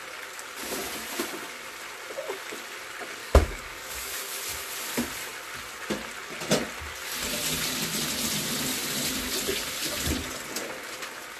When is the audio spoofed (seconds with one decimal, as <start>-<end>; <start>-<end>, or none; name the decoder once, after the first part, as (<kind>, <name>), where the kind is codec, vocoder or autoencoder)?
3.2-4.4 (codec, DAC)